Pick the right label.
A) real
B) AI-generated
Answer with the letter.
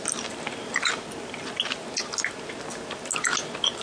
A